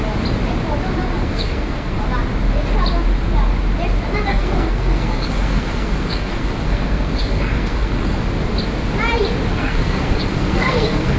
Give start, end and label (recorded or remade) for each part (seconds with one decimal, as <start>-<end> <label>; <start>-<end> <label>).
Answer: 0.0-1.2 recorded; 1.2-2.0 remade; 2.0-4.3 recorded; 4.3-8.2 remade; 8.2-9.5 recorded; 9.5-11.2 remade